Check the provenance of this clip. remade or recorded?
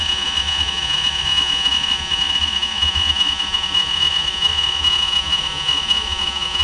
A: remade